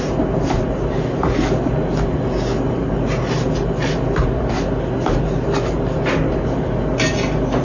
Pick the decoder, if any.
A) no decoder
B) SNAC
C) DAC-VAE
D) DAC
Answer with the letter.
A